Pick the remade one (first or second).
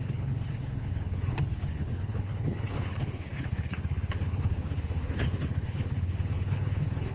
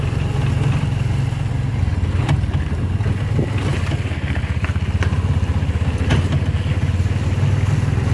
first